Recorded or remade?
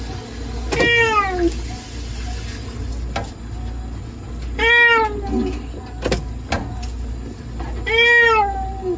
recorded